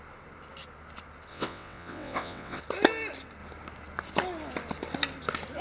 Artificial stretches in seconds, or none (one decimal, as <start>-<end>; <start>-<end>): 1.3-2.6